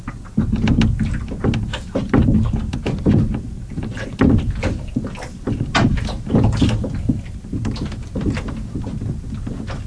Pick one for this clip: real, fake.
real